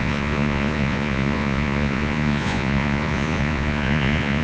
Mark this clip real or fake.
fake